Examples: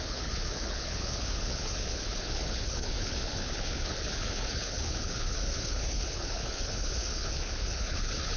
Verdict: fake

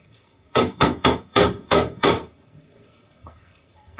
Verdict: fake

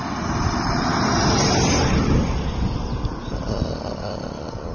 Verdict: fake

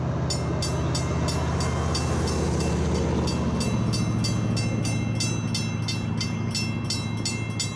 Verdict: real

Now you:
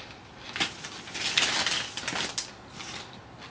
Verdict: real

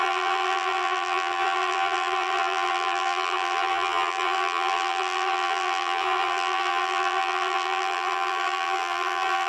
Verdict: fake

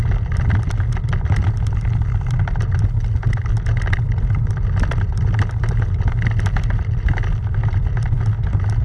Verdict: real